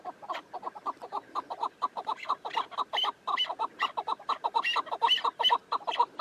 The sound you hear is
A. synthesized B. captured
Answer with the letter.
B